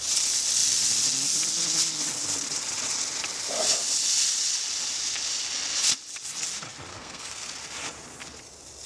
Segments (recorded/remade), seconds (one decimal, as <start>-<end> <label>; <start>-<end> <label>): 0.0-6.9 recorded; 6.9-7.5 remade; 7.5-8.9 recorded